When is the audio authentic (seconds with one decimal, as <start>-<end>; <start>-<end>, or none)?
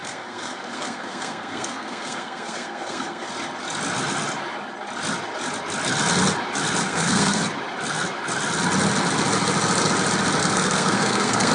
3.3-6.8; 7.4-10.4